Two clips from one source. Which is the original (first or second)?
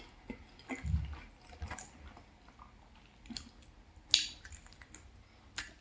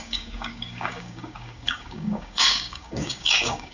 first